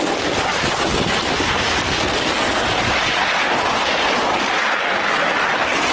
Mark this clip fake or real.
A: real